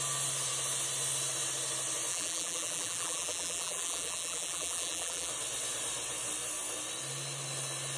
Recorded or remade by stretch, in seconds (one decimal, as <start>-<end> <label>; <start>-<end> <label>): 0.0-2.1 recorded; 2.1-5.3 remade; 5.3-8.0 recorded